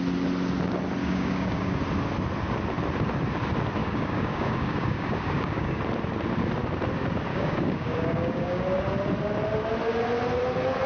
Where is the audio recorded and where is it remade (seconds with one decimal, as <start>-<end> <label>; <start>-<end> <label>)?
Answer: 0.0-1.0 recorded; 1.0-1.8 remade; 1.8-3.8 recorded; 3.8-5.8 remade; 5.8-7.3 recorded; 7.3-8.6 remade; 8.6-10.9 recorded